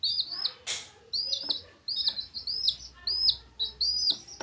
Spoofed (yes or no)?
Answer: no